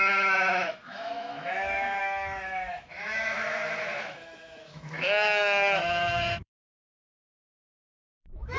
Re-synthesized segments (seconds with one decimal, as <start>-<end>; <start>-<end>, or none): 0.0-8.6